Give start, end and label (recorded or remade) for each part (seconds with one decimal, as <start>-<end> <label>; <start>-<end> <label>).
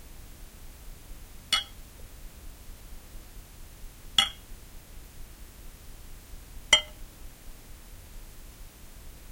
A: 0.0-9.3 recorded